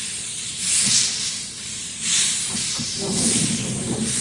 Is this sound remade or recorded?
remade